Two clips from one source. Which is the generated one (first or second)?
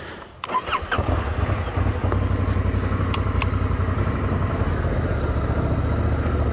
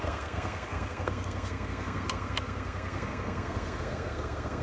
second